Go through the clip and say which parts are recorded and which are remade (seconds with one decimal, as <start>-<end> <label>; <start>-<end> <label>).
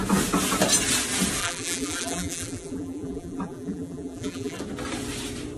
0.0-1.4 recorded; 1.4-4.6 remade; 4.6-5.6 recorded